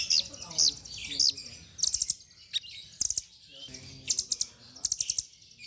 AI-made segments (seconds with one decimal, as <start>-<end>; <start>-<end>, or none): none